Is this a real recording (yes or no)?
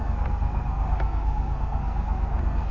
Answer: no